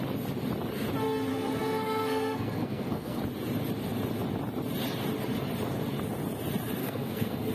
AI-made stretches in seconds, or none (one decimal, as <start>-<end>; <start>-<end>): 1.3-3.2; 6.8-7.5